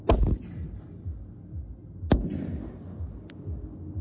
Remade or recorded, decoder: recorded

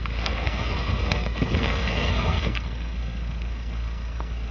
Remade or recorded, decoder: remade, codec, SNAC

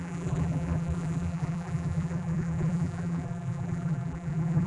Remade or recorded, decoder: remade, vocoder, BigVGAN v2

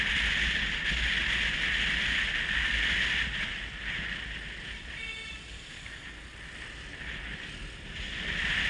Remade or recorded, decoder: recorded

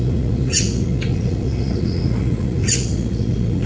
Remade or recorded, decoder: remade, vocoder, Vocos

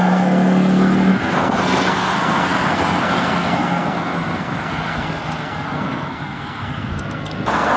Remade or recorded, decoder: remade, codec, SNAC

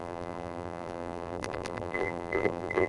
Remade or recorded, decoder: remade, vocoder, BigVGAN v2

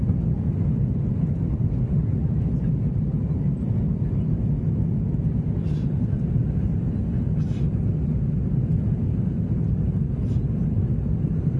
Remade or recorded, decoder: recorded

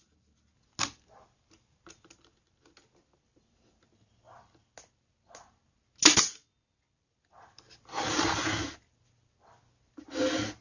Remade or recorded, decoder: recorded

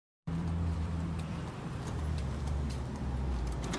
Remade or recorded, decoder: remade, vocoder, BigVGAN v2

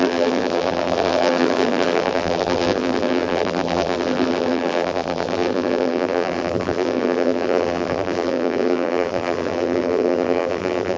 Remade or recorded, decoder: remade, vocoder, BigVGAN v2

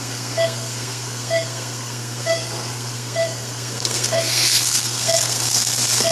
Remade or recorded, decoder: remade, codec, SNAC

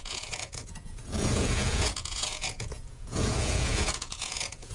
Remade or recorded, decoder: remade, vocoder, Vocos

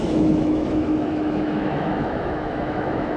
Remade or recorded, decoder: remade, autoencoder, DAC-VAE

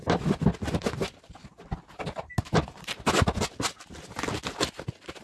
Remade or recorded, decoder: recorded